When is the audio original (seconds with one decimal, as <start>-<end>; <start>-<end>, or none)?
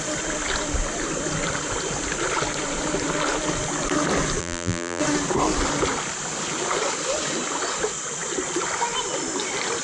0.0-4.4; 5.0-9.8